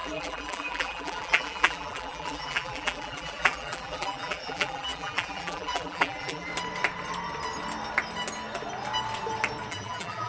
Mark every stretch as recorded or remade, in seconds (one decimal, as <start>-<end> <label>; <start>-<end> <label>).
0.0-6.5 remade; 6.5-9.7 recorded; 9.7-10.3 remade

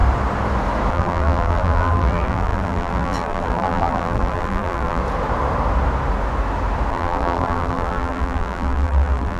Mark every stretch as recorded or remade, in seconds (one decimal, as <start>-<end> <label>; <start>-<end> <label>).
0.0-0.9 recorded; 0.9-5.0 remade; 5.0-6.9 recorded; 6.9-9.4 remade

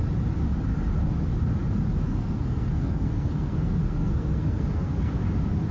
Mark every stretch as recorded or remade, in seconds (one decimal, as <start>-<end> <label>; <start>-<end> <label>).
0.0-2.1 recorded; 2.1-5.1 remade; 5.1-5.7 recorded

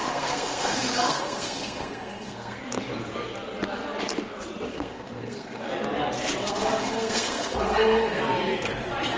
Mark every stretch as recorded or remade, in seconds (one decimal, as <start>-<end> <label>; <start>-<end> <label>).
0.0-2.6 remade; 2.6-4.7 recorded; 4.7-5.7 remade; 5.7-6.4 recorded; 6.4-8.2 remade; 8.2-9.2 recorded

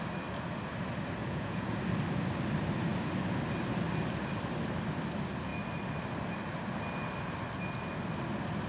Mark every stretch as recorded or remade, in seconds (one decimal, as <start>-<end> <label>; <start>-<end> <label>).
0.0-1.2 recorded; 1.2-1.8 remade; 1.8-8.7 recorded